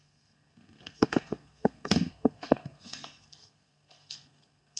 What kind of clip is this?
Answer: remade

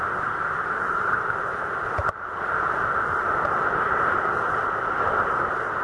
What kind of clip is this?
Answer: recorded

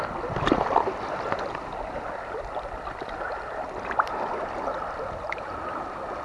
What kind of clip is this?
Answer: recorded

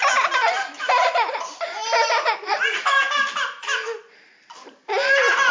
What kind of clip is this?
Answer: recorded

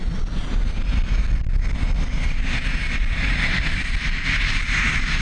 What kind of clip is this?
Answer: recorded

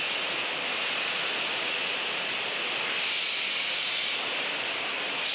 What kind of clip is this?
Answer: recorded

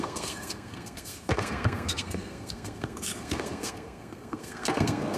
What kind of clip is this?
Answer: remade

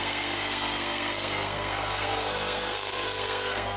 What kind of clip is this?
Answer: remade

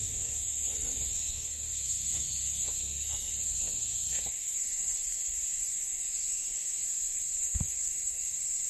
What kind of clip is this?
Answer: remade